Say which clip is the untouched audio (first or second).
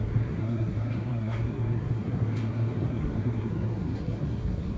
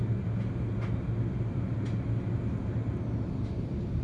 second